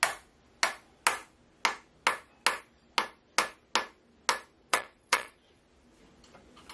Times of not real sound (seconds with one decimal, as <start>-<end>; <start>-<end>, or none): 4.7-5.6

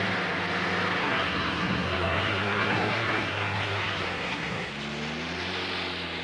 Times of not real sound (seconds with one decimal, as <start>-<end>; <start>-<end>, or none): 1.0-4.7

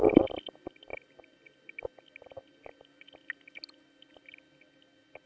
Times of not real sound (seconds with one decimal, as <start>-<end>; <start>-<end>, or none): none

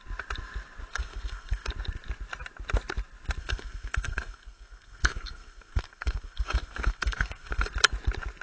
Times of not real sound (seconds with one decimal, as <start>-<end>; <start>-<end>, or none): 0.9-1.7; 3.4-7.7

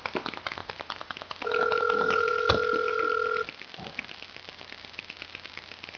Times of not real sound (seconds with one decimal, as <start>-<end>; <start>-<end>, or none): 0.6-1.8

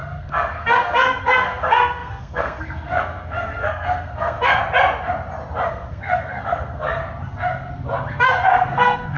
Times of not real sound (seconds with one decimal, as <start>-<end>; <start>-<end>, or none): 0.0-4.6; 5.7-7.0; 8.1-9.2